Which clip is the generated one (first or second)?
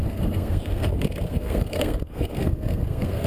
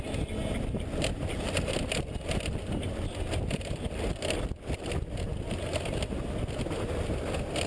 first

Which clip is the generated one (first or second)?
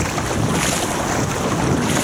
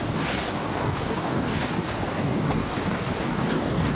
second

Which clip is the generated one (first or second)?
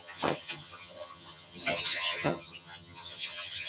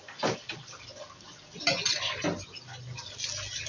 first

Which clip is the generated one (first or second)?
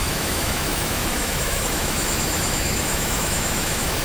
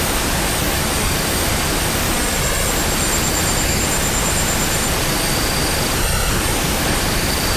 first